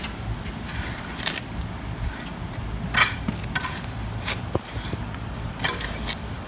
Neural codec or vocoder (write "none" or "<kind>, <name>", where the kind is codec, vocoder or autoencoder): none